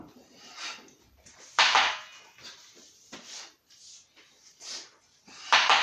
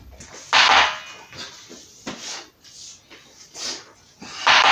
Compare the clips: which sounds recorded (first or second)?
second